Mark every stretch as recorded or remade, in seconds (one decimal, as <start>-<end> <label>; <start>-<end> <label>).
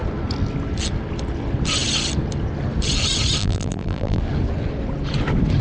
0.0-3.4 recorded; 3.4-4.2 remade; 4.2-5.6 recorded